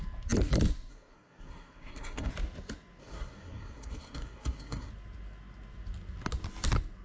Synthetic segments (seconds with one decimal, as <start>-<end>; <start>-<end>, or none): 0.9-2.3; 3.0-4.9